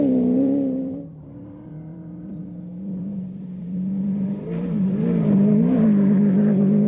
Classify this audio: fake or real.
fake